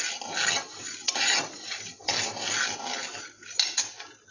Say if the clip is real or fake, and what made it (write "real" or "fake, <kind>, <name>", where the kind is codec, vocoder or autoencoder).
real